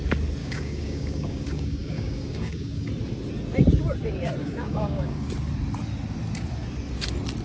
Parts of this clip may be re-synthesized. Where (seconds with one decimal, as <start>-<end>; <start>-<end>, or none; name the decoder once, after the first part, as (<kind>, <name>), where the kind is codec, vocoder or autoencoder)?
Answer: 0.4-2.9 (codec, DAC); 4.4-5.3